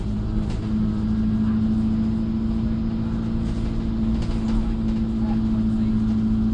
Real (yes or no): yes